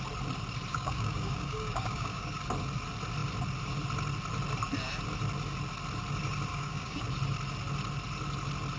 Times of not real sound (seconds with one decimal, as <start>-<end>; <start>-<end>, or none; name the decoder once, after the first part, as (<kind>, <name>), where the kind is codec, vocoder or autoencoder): 0.7-2.4 (codec, DAC); 6.5-7.0